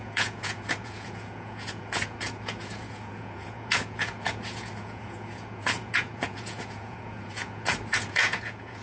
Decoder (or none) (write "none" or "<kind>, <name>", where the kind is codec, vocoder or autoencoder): vocoder, Vocos